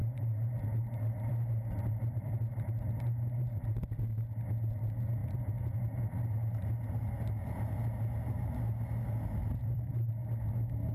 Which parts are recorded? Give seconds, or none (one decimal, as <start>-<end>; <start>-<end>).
3.8-9.4; 10.1-10.9